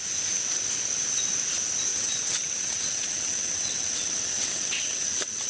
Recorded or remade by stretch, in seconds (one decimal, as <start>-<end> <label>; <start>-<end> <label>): 0.0-1.9 recorded; 1.9-5.5 remade

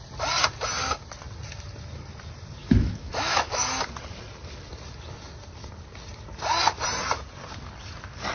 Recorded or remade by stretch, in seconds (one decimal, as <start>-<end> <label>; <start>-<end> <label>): 0.0-2.6 recorded; 2.6-3.7 remade; 3.7-8.3 recorded

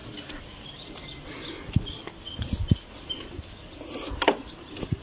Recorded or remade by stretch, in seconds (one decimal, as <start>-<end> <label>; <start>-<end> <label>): 0.0-0.6 recorded; 0.6-1.0 remade; 1.0-2.9 recorded; 2.9-5.0 remade

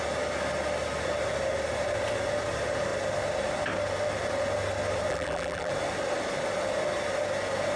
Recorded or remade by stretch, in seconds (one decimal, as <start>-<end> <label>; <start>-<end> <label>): 0.0-5.1 recorded; 5.1-5.7 remade; 5.7-7.8 recorded

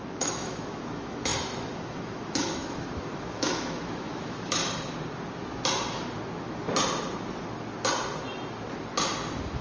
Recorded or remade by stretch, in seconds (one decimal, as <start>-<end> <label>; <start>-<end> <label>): 0.0-4.6 remade; 4.6-9.6 recorded